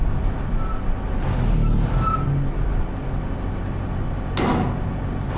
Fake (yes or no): no